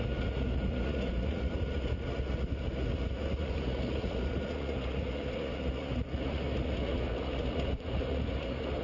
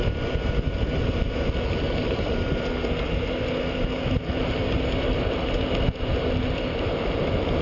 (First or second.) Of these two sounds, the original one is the second